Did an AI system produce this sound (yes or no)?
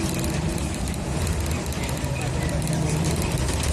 yes